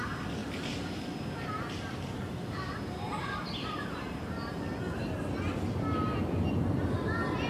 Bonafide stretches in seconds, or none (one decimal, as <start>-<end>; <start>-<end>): 0.0-7.5